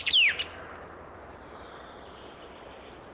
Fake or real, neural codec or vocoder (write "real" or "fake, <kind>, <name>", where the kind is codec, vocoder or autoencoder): real